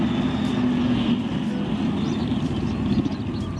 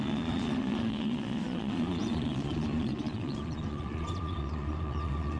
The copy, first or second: second